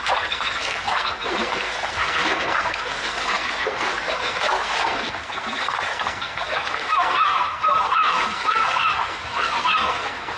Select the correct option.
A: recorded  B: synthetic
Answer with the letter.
B